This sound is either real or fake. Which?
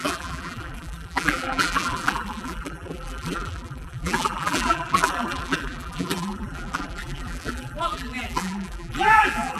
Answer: fake